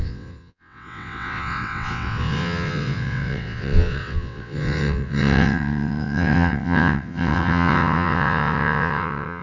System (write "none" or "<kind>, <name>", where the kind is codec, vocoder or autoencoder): vocoder, WaveNeXt